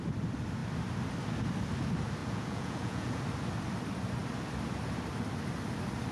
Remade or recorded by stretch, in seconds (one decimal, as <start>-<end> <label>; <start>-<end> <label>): 0.0-2.2 recorded; 2.2-3.2 remade; 3.2-6.1 recorded